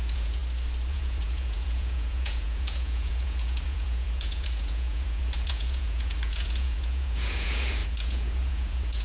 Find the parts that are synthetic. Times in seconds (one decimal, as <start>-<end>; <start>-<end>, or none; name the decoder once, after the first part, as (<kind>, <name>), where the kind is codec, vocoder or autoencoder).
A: 0.0-0.4 (vocoder, Vocos); 0.9-9.0